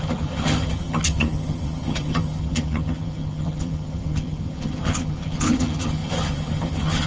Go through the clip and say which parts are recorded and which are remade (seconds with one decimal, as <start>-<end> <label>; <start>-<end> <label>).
0.0-7.1 remade